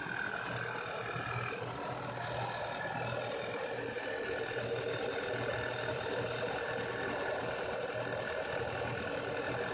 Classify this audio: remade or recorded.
recorded